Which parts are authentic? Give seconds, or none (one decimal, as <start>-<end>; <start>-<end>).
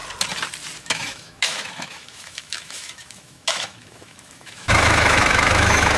0.0-0.8